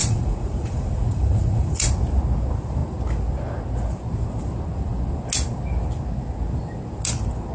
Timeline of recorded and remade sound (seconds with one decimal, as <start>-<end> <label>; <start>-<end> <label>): 0.0-1.9 remade; 1.9-7.5 recorded